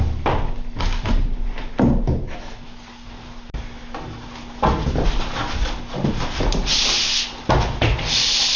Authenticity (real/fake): real